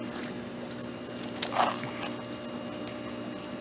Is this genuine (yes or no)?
yes